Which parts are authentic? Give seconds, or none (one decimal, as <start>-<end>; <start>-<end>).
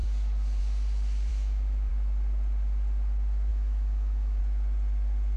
0.0-1.3; 1.9-3.5; 4.4-5.4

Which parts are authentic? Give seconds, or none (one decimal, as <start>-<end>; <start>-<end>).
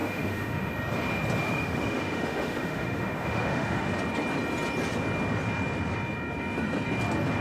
0.7-1.4; 3.9-7.4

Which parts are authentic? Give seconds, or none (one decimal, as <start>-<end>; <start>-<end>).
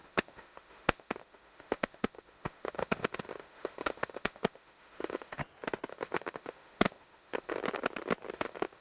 5.4-5.9; 7.6-8.3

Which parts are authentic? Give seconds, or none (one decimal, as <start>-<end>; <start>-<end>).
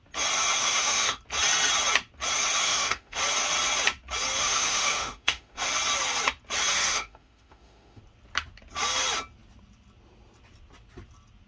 0.0-0.6; 1.2-2.6; 3.2-4.4; 5.7-6.9; 8.0-11.5